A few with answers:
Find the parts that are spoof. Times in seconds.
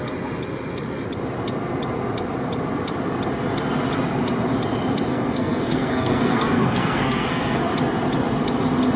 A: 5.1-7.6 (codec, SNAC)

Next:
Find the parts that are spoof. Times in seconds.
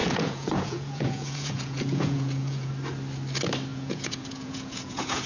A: 0.0-2.7 (vocoder, Vocos); 3.7-5.3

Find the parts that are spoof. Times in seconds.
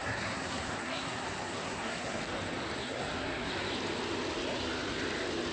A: 0.0-2.2 (codec, SNAC); 2.8-3.5